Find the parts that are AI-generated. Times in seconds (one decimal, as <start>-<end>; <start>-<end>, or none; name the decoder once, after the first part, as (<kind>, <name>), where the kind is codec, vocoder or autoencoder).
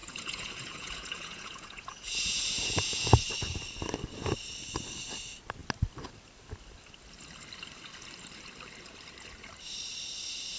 0.0-3.1 (vocoder, Vocos)